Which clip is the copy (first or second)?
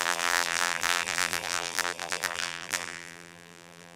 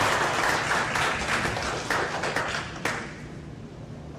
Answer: first